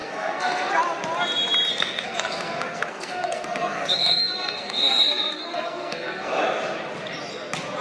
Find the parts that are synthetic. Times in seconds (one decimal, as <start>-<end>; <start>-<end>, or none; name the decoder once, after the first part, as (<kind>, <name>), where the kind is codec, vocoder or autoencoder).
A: 0.0-0.7 (codec, SNAC); 1.7-6.4